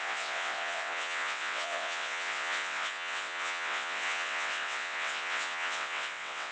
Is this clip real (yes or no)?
no